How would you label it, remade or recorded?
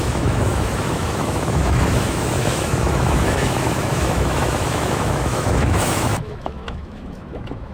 remade